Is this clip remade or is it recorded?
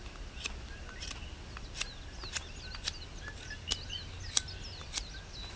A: recorded